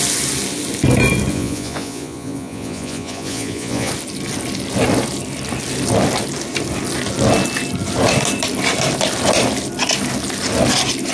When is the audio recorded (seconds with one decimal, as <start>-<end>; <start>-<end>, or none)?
0.0-1.3; 3.9-11.1